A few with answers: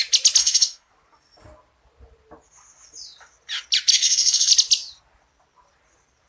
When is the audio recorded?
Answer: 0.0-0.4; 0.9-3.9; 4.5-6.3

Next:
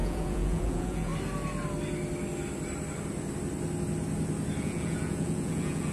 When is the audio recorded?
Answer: 1.1-4.6